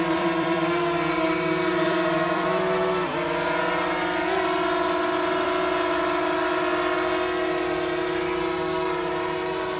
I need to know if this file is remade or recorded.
remade